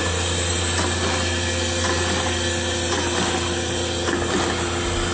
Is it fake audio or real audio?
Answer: real